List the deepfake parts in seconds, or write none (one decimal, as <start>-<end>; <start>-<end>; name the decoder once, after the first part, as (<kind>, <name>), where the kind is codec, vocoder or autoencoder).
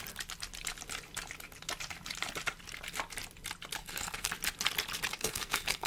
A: 3.8-4.3 (codec, SNAC); 5.1-5.9